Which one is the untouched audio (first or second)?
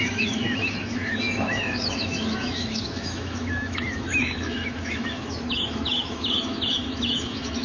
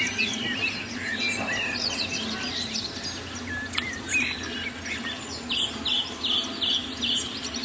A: second